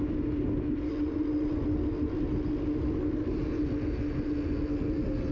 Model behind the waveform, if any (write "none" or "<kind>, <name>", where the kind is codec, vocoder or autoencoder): none